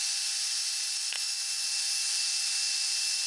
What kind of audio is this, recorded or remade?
recorded